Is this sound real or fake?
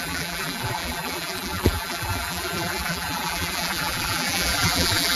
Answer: fake